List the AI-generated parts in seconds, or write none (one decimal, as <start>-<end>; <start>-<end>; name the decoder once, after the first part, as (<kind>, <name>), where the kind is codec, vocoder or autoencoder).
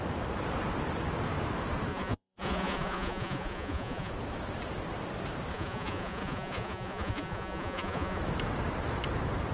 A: 1.9-4.1 (vocoder, Vocos); 5.5-8.2